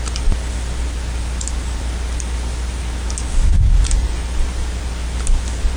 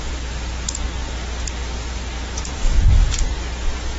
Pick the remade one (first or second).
second